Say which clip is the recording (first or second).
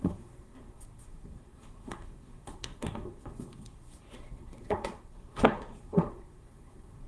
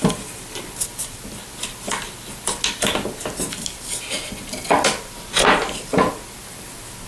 second